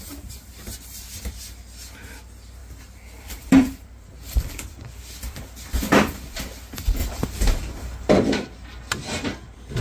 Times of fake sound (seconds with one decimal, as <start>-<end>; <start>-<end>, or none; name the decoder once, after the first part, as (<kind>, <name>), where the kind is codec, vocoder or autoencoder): 2.6-5.3 (vocoder, BigVGAN v2); 7.0-8.1